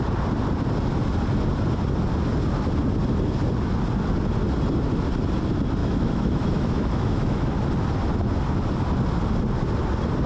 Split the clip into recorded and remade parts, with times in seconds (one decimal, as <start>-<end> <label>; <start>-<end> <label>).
0.0-5.8 recorded; 5.8-7.5 remade; 7.5-10.3 recorded